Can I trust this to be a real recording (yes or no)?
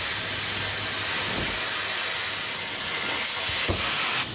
yes